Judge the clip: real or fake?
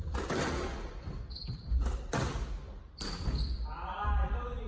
real